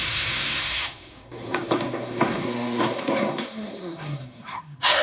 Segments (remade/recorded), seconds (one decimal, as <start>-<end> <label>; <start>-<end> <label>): 0.0-5.0 remade